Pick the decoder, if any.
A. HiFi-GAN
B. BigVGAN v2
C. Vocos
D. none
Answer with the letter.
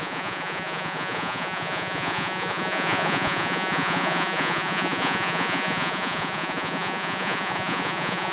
C